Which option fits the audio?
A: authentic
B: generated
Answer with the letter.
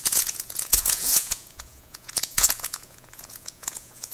B